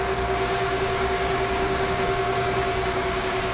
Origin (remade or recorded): remade